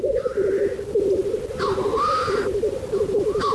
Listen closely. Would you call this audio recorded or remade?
recorded